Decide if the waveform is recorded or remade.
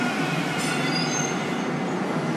recorded